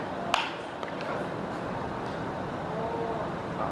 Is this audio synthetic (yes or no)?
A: no